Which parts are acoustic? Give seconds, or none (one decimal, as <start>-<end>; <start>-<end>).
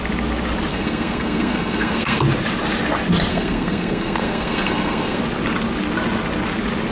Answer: 0.0-0.7; 2.2-3.3; 5.2-6.9